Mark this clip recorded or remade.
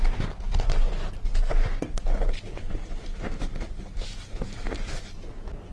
recorded